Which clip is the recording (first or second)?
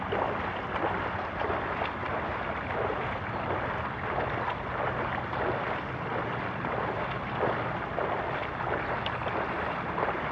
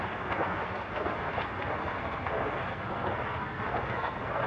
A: first